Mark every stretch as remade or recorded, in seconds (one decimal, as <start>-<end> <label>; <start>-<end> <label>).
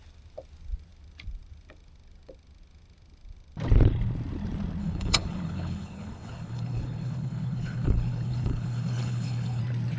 0.0-4.8 recorded; 4.8-9.6 remade; 9.6-10.0 recorded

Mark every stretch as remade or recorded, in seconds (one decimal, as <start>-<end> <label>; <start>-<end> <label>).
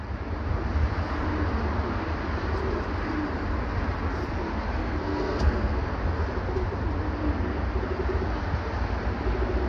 0.0-4.8 recorded; 4.8-5.9 remade; 5.9-9.7 recorded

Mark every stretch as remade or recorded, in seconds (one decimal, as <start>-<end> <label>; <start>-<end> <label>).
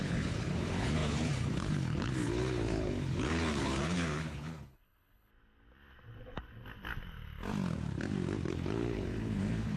0.0-5.3 remade; 5.3-8.5 recorded; 8.5-9.8 remade